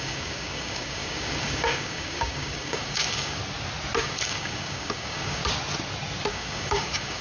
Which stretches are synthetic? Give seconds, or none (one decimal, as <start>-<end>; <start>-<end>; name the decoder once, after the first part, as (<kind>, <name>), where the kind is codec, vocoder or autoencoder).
0.0-3.4 (codec, DAC); 4.0-5.4; 6.3-7.2